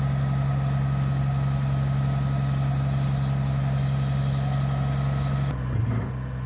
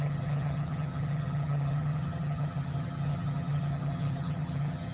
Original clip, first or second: first